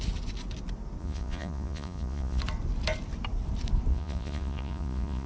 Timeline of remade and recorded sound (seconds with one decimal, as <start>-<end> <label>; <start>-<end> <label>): 0.0-1.0 recorded; 1.0-2.4 remade; 2.4-3.9 recorded; 3.9-5.3 remade